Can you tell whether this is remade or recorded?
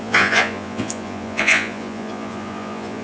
remade